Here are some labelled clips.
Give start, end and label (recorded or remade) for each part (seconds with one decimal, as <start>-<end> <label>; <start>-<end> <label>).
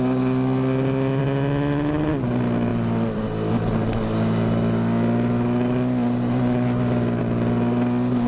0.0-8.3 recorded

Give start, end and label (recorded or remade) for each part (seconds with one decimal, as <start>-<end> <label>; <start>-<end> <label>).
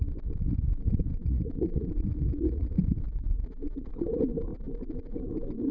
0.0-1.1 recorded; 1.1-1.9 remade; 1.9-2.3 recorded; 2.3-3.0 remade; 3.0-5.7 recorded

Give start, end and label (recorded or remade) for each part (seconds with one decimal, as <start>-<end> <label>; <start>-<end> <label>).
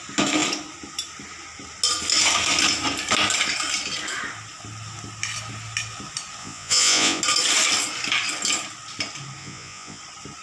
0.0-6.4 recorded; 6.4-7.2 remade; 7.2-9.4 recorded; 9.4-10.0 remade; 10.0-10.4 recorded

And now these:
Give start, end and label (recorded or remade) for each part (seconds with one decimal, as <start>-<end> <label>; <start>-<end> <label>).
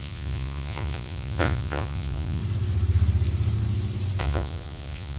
0.0-2.4 remade; 2.4-4.2 recorded; 4.2-5.2 remade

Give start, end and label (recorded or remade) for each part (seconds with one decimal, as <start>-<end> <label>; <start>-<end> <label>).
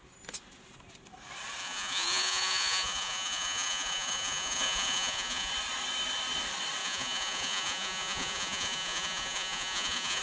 0.0-1.6 recorded; 1.6-5.5 remade; 5.5-6.8 recorded; 6.8-10.2 remade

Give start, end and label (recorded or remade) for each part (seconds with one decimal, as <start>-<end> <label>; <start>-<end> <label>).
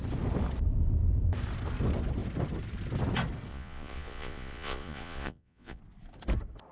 0.0-3.5 recorded; 3.5-5.8 remade; 5.8-6.7 recorded